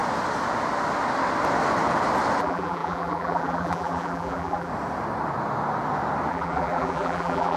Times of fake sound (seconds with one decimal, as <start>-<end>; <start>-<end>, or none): 2.4-4.7; 6.3-7.6